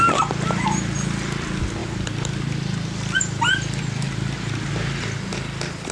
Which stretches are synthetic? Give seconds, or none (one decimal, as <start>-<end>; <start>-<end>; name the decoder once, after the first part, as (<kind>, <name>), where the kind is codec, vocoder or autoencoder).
none